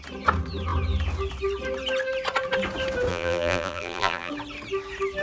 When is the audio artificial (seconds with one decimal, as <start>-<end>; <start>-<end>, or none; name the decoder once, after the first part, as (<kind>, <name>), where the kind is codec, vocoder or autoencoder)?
3.1-4.3 (vocoder, BigVGAN v2)